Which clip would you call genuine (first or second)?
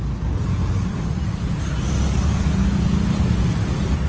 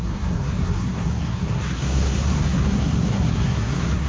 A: first